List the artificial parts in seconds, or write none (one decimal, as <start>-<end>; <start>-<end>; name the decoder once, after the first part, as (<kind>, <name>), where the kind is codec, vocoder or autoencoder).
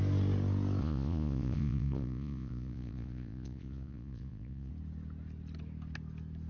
0.8-4.7 (vocoder, Vocos)